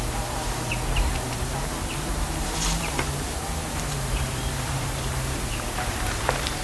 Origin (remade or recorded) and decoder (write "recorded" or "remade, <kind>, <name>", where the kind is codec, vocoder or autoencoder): remade, vocoder, BigVGAN v2